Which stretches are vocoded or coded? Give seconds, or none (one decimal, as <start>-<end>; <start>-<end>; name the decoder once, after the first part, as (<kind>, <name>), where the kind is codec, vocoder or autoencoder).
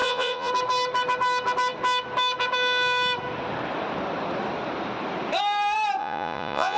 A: 0.0-0.5 (vocoder, Vocos); 6.0-6.8